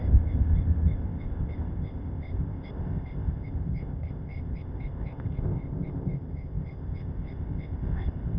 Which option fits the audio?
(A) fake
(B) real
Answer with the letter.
A